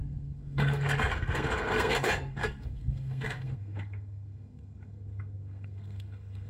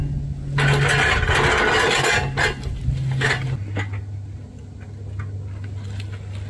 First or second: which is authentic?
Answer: second